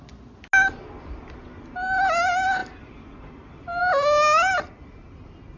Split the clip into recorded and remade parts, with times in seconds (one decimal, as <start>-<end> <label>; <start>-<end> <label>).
0.0-5.6 recorded